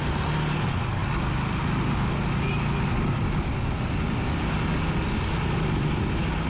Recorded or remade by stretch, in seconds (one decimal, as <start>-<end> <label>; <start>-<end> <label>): 0.0-6.5 recorded